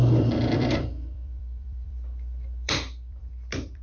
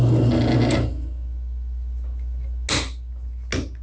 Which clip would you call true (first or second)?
second